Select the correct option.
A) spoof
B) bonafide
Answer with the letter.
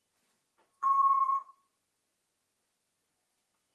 A